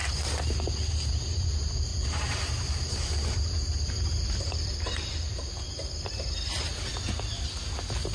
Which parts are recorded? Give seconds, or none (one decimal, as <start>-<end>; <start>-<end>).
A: 0.0-1.9; 5.4-8.1